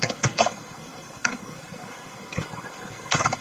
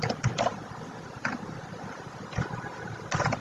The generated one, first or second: first